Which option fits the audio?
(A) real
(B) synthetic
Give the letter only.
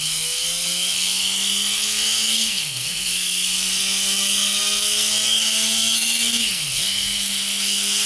B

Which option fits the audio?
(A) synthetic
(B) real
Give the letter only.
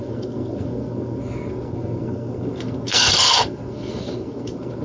A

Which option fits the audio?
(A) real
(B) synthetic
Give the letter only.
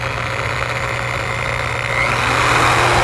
A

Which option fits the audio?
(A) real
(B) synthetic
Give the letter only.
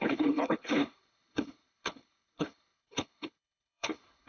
B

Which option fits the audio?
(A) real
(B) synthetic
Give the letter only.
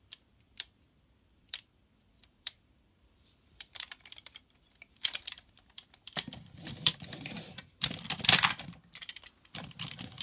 B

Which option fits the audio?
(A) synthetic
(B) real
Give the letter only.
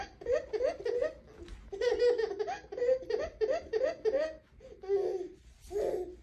B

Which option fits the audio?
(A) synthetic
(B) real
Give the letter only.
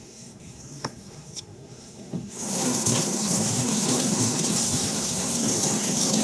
A